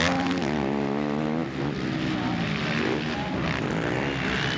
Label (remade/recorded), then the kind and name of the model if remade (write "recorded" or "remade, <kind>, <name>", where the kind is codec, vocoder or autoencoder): recorded